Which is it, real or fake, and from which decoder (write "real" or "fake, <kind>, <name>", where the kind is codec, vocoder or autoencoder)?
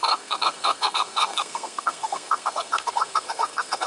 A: fake, codec, SNAC